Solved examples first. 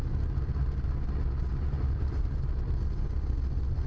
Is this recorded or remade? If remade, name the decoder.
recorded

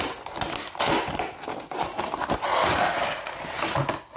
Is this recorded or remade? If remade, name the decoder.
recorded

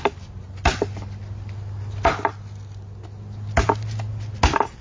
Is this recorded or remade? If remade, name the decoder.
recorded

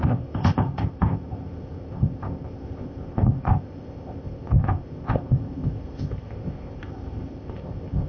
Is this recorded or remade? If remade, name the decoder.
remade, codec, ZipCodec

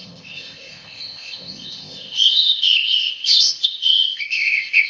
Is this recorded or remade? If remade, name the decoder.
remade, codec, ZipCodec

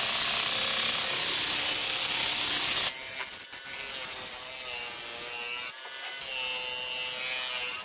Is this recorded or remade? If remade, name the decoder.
recorded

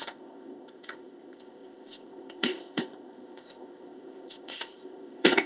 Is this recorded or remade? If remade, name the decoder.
remade, codec, ZipCodec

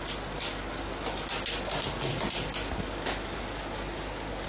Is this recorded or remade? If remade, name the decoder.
recorded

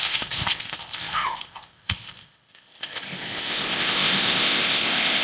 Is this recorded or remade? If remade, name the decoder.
remade, codec, ZipCodec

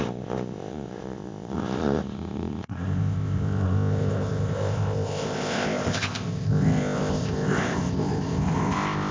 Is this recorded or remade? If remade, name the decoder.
remade, codec, ZipCodec